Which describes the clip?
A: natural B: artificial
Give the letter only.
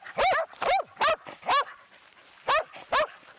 A